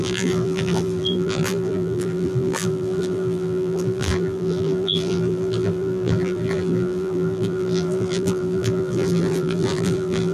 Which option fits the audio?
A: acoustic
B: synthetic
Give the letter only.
B